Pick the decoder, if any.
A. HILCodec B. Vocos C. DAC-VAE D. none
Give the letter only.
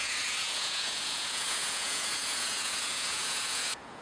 B